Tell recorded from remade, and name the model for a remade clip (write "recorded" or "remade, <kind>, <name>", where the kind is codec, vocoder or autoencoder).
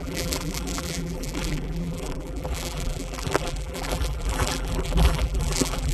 remade, vocoder, BigVGAN v2